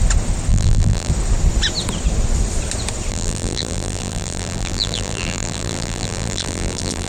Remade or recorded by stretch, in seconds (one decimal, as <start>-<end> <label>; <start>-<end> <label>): 0.0-0.5 recorded; 0.5-1.1 remade; 1.1-3.1 recorded; 3.1-7.1 remade